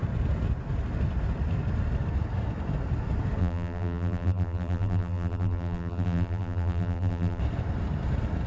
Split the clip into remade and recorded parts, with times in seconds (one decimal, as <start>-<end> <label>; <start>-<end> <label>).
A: 0.0-3.4 recorded; 3.4-7.4 remade; 7.4-8.5 recorded